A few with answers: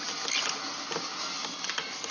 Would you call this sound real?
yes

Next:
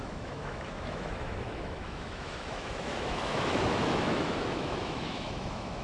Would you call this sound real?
no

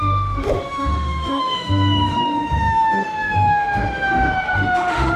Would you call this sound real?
no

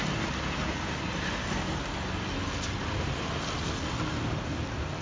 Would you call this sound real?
yes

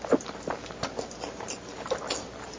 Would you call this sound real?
yes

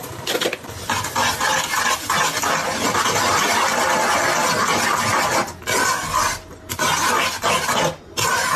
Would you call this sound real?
yes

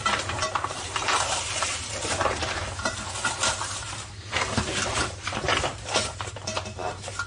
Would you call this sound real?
no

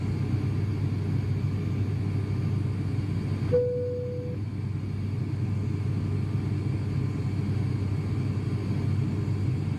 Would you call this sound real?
yes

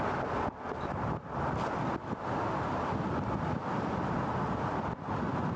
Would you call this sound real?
yes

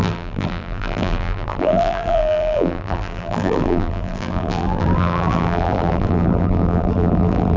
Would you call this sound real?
no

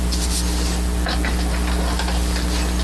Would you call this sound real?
yes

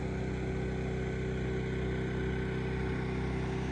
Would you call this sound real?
yes